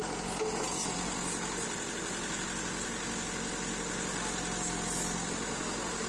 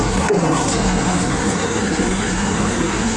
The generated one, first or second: second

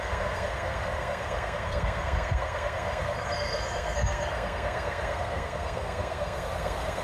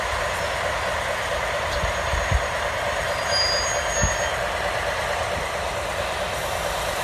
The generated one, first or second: first